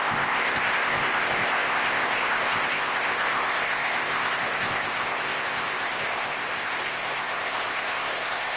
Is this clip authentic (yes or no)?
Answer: no